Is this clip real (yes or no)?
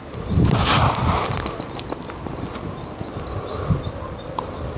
yes